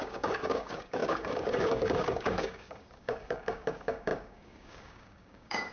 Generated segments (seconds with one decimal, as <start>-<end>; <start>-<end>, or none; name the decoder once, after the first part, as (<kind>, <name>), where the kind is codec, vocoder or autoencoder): 0.0-5.7 (codec, DAC)